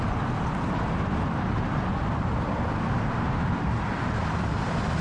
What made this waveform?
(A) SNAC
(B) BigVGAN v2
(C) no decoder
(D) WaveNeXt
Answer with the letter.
C